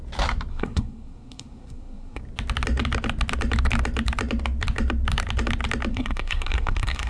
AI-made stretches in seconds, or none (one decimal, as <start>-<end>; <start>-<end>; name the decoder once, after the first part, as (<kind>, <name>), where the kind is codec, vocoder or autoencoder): 0.5-2.2 (codec, SNAC); 5.9-7.1